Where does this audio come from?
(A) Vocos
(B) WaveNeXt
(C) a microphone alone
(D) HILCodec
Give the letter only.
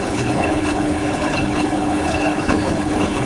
D